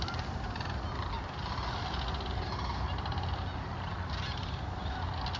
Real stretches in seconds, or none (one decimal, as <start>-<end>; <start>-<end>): 0.0-5.4